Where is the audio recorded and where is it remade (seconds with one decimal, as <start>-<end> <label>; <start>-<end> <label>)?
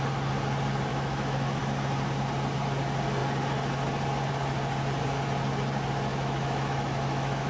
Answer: 0.0-0.9 recorded; 0.9-1.6 remade; 1.6-6.1 recorded; 6.1-7.5 remade